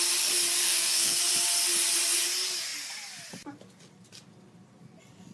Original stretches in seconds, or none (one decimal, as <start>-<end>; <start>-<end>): 0.0-0.6; 1.2-5.3